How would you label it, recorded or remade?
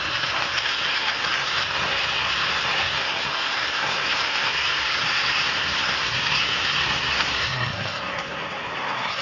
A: remade